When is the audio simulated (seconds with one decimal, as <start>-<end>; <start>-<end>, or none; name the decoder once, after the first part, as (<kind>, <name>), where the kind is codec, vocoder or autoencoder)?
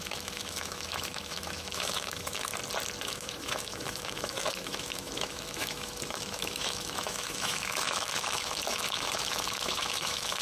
0.0-2.5 (autoencoder, DAC-VAE); 3.0-10.4